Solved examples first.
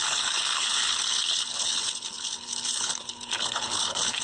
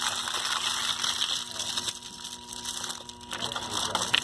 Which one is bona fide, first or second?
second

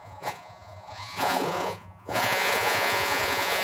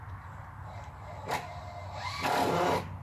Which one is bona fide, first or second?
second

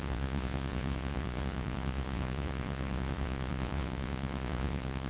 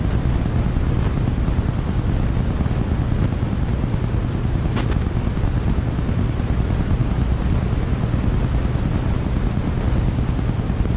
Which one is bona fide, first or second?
second